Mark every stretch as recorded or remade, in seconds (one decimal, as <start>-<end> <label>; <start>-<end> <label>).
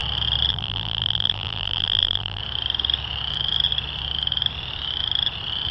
0.0-0.5 recorded; 0.5-2.4 remade; 2.4-5.7 recorded